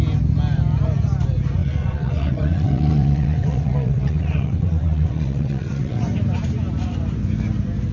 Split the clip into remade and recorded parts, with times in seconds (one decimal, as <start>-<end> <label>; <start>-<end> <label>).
0.0-1.6 recorded; 1.6-6.0 remade; 6.0-7.9 recorded

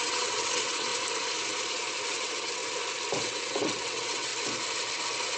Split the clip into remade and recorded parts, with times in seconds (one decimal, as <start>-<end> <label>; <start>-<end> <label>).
0.0-0.9 remade; 0.9-2.1 recorded; 2.1-2.6 remade; 2.6-3.2 recorded; 3.2-4.3 remade; 4.3-5.4 recorded

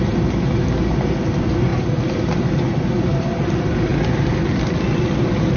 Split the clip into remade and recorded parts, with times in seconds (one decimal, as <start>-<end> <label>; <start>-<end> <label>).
0.0-5.6 recorded

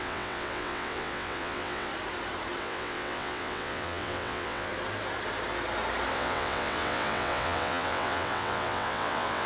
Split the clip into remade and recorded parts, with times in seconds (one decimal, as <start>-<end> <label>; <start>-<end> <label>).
0.0-1.9 remade; 1.9-2.6 recorded; 2.6-4.7 remade; 4.7-6.1 recorded; 6.1-9.5 remade

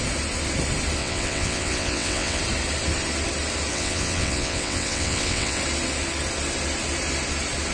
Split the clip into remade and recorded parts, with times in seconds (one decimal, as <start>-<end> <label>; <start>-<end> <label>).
0.0-1.0 recorded; 1.0-2.4 remade; 2.4-3.7 recorded; 3.7-5.6 remade; 5.6-7.7 recorded

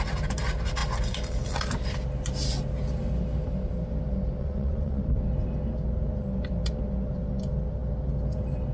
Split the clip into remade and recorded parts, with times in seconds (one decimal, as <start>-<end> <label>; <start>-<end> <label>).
0.0-4.4 recorded; 4.4-5.0 remade; 5.0-8.7 recorded

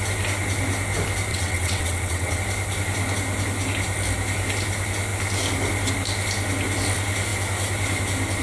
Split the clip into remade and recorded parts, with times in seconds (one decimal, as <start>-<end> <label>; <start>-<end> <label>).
0.0-1.3 recorded; 1.3-2.4 remade; 2.4-8.4 recorded

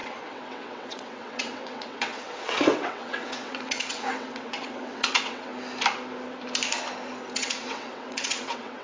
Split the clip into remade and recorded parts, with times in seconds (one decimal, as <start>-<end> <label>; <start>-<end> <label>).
0.0-5.5 remade; 5.5-7.3 recorded; 7.3-8.8 remade